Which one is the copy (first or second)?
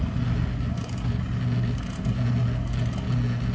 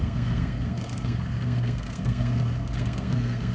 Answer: second